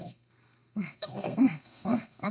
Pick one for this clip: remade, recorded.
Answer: remade